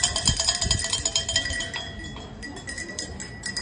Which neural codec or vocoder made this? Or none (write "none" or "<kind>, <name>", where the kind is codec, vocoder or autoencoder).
none